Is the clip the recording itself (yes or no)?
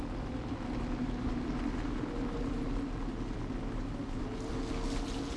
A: yes